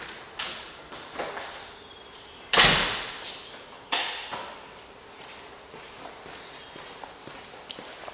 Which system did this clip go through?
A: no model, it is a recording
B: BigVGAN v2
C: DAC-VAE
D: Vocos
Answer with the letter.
A